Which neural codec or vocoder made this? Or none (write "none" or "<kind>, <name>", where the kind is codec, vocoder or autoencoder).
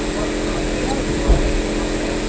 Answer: none